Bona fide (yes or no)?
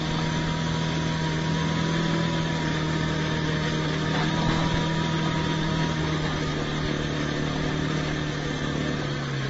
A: yes